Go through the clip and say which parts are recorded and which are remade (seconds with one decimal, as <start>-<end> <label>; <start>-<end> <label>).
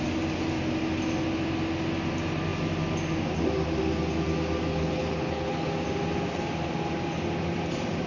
0.0-4.7 recorded; 4.7-5.7 remade; 5.7-8.1 recorded